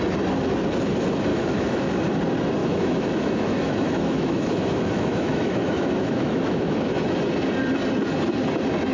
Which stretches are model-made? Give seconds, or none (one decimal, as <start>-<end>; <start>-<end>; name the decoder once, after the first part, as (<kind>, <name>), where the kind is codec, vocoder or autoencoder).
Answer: 1.3-1.9 (autoencoder, DAC-VAE); 2.6-7.0